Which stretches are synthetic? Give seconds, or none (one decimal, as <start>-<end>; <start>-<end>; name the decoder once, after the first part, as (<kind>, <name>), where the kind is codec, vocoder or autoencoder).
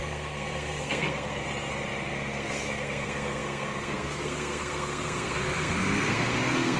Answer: 0.0-1.4 (codec, SNAC); 2.1-6.8